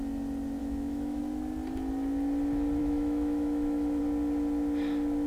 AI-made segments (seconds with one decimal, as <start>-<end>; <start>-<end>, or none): 0.6-1.2; 2.8-4.0